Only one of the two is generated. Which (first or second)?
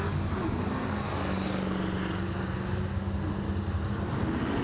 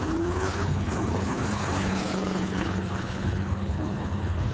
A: second